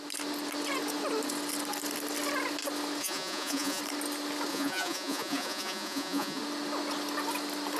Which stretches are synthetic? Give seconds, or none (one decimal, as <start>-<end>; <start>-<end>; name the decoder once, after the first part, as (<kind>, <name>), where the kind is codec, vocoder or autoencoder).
3.0-3.8 (vocoder, Vocos); 4.5-6.4